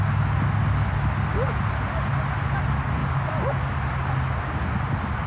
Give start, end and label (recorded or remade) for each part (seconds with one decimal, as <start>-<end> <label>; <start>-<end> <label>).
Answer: 0.0-5.3 recorded